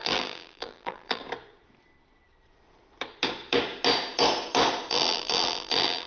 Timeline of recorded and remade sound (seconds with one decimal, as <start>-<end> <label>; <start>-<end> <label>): 0.0-1.2 remade; 1.2-4.9 recorded; 4.9-6.1 remade